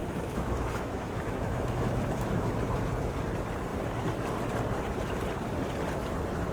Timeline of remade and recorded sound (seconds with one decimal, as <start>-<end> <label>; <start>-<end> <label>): 0.0-2.5 remade; 2.5-6.5 recorded